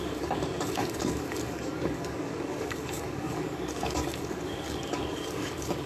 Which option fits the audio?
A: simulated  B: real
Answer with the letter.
A